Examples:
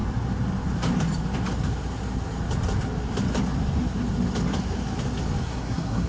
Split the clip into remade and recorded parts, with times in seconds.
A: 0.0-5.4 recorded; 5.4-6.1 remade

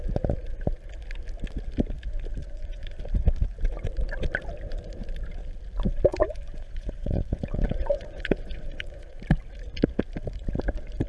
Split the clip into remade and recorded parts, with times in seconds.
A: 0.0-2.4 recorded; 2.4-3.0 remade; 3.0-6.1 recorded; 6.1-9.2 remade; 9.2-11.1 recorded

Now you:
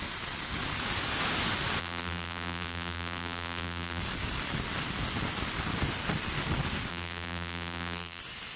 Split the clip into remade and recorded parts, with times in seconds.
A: 0.0-1.8 recorded; 1.8-4.0 remade; 4.0-6.9 recorded; 6.9-8.2 remade; 8.2-8.6 recorded